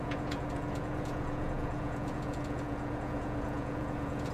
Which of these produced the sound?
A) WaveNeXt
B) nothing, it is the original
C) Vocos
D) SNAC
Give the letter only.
C